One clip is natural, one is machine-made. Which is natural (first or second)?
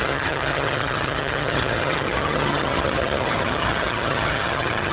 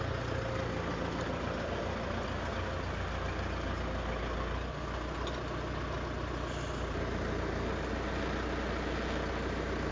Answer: second